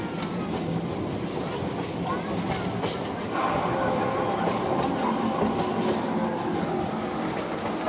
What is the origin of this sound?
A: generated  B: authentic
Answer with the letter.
B